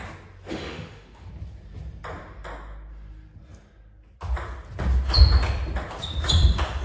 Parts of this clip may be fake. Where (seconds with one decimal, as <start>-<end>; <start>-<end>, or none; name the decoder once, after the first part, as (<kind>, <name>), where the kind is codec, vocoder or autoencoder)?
0.5-1.3 (autoencoder, DAC-VAE)